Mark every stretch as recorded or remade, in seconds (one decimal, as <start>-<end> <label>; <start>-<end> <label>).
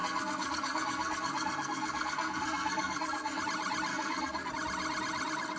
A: 0.0-3.4 remade; 3.4-3.9 recorded; 3.9-4.5 remade; 4.5-5.6 recorded